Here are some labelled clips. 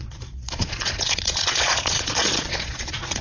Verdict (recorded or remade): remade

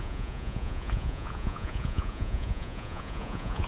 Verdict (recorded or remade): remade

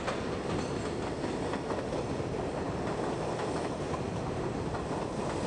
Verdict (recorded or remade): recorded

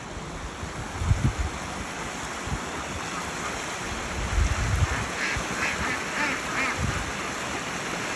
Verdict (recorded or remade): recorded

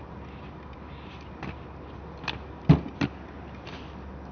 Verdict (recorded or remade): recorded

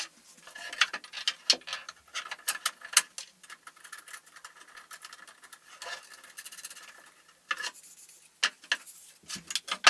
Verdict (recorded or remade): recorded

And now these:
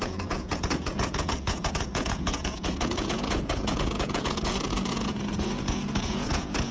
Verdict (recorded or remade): remade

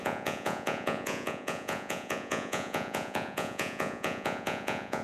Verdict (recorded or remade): remade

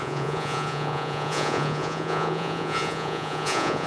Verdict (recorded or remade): remade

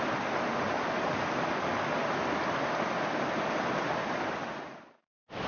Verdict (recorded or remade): recorded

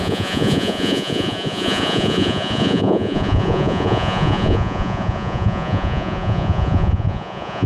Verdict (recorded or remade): remade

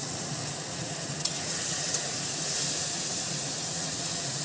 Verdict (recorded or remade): remade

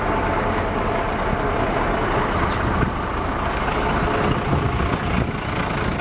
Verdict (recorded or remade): recorded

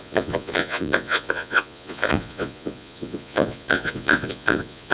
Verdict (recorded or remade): remade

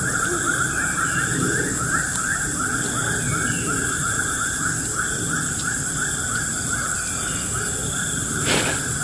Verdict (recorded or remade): recorded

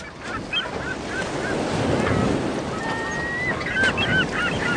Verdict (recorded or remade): recorded